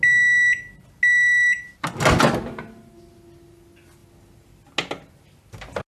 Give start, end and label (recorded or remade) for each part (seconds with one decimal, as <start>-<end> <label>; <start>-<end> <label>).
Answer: 0.0-6.0 recorded